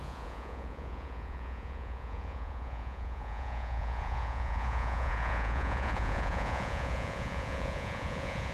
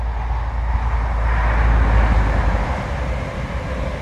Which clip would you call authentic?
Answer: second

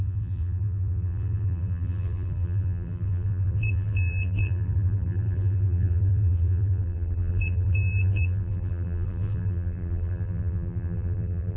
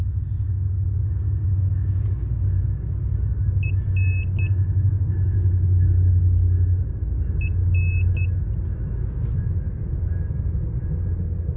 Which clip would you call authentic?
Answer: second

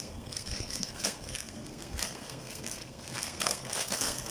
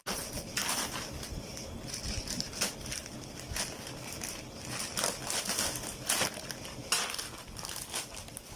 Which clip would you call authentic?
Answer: second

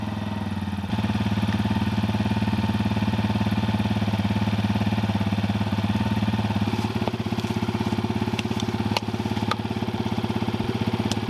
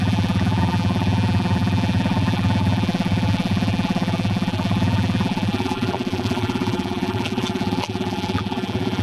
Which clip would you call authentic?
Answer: first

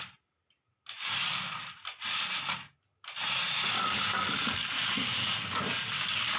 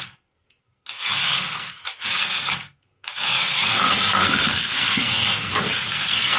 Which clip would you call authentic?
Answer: first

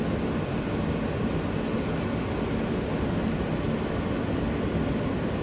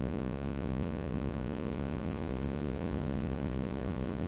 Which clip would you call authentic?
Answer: first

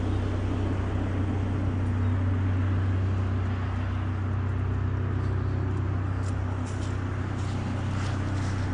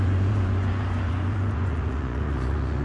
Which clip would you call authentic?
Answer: first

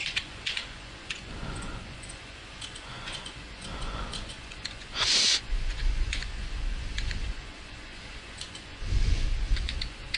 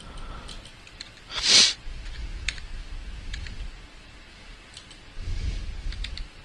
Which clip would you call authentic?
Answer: second